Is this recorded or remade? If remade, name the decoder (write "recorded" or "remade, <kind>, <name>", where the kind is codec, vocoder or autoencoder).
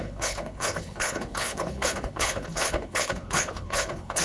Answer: remade, codec, HILCodec